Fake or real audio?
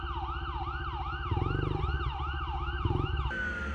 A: real